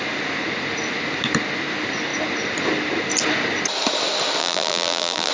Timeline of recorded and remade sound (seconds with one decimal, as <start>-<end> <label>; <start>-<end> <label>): 0.0-4.4 recorded; 4.4-5.3 remade